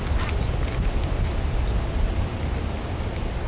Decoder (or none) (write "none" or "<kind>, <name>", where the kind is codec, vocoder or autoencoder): none